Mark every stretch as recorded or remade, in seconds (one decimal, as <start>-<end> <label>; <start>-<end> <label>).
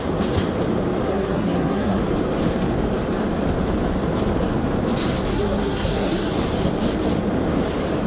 0.0-1.1 recorded; 1.1-2.0 remade; 2.0-5.3 recorded; 5.3-6.3 remade; 6.3-8.1 recorded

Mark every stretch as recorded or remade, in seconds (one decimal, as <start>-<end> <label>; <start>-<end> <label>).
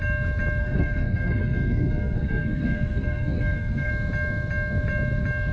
0.0-0.6 recorded; 0.6-3.9 remade; 3.9-5.5 recorded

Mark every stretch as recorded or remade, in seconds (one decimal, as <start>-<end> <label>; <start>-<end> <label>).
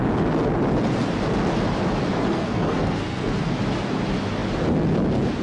0.0-2.2 recorded; 2.2-3.4 remade; 3.4-5.4 recorded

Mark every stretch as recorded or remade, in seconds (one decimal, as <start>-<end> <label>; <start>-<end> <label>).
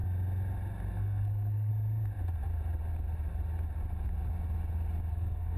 0.0-0.9 recorded; 0.9-1.7 remade; 1.7-5.1 recorded; 5.1-5.6 remade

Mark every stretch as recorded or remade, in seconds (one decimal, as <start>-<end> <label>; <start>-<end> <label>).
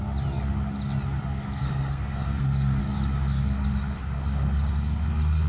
0.0-1.6 recorded; 1.6-2.8 remade; 2.8-5.5 recorded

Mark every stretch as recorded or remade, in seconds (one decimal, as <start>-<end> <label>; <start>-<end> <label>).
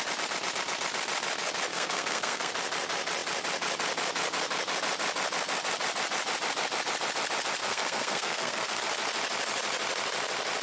0.0-1.7 recorded; 1.7-2.5 remade; 2.5-7.6 recorded; 7.6-8.8 remade; 8.8-10.6 recorded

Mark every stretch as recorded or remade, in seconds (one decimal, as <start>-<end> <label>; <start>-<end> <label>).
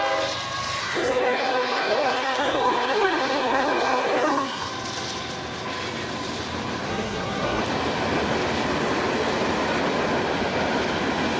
0.0-0.8 recorded; 0.8-4.7 remade; 4.7-6.9 recorded; 6.9-7.6 remade; 7.6-11.4 recorded